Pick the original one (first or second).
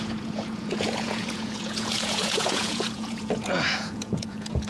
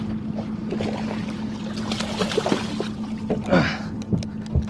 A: second